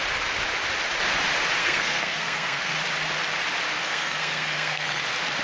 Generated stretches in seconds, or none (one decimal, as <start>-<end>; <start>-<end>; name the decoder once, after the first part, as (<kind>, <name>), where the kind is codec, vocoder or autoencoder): 1.6-2.7 (codec, SNAC); 3.8-5.0